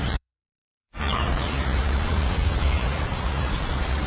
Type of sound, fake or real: fake